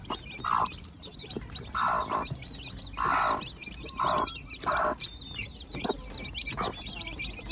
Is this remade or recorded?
recorded